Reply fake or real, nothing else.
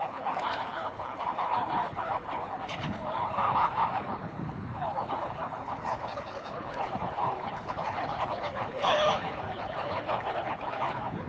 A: fake